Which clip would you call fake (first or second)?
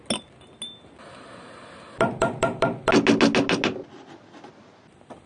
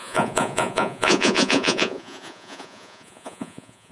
second